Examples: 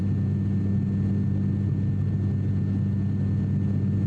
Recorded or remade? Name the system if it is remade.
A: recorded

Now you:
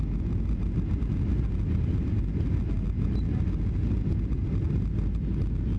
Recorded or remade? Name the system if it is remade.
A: recorded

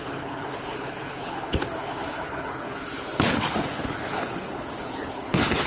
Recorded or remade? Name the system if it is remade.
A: remade, codec, HILCodec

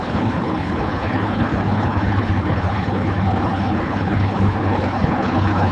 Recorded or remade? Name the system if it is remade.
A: remade, codec, HILCodec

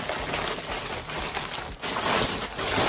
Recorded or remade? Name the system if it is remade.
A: recorded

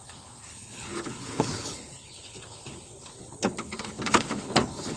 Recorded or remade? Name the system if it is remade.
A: remade, codec, HILCodec